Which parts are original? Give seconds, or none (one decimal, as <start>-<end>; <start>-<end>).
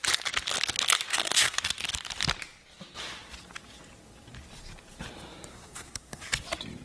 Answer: 0.0-1.1; 1.6-5.5; 6.2-6.8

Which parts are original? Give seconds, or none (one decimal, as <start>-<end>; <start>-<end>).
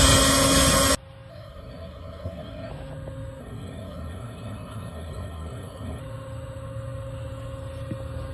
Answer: 0.0-1.3; 2.7-3.4; 6.0-8.3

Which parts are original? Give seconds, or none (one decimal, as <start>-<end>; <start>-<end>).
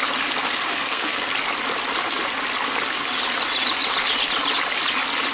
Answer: 0.0-0.7; 1.3-5.3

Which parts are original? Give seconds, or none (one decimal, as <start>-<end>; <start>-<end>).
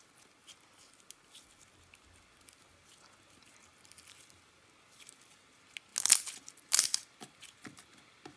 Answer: 0.0-8.4